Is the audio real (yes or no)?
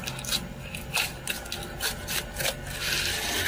yes